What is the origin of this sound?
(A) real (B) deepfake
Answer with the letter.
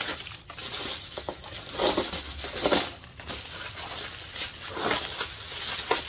A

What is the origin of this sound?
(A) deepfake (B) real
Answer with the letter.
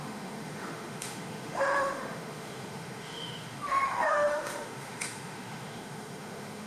A